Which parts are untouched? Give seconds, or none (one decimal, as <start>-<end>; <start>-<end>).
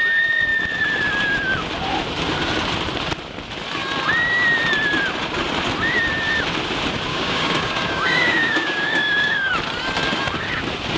0.0-7.1; 9.5-11.0